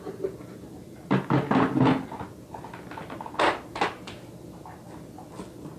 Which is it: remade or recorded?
recorded